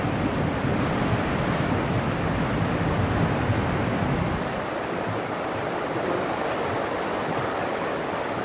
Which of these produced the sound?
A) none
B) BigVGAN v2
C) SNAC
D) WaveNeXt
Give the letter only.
A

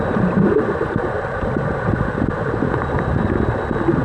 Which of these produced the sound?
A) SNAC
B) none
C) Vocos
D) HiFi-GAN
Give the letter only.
B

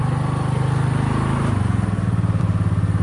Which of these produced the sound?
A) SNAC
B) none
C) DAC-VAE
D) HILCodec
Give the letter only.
B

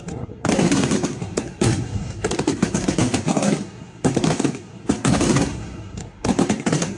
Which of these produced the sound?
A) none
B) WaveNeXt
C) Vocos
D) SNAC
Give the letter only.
D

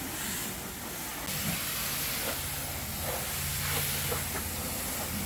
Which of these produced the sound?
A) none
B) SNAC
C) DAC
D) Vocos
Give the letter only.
A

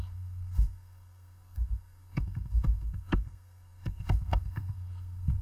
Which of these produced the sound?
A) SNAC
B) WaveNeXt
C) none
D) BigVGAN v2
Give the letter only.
A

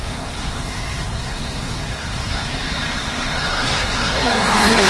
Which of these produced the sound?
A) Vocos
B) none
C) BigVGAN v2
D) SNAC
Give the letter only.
D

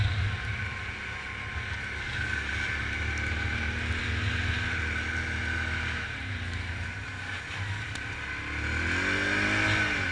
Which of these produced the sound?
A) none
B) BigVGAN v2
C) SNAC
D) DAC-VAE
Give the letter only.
A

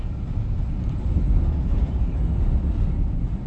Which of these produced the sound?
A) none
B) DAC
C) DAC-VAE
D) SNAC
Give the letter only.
A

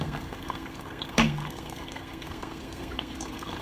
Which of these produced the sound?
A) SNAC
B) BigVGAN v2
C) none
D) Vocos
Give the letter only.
A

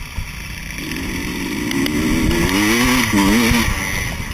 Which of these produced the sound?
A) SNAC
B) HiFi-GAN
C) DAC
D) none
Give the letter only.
D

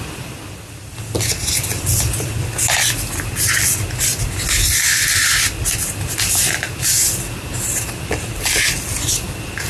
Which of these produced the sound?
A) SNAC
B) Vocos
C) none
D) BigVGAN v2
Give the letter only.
C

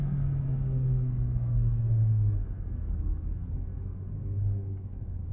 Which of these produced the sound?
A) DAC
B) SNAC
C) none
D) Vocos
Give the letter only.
B